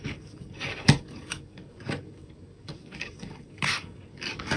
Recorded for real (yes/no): no